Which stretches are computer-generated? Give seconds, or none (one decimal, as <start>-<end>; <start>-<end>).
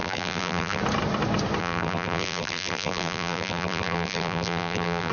0.0-0.8; 1.6-5.1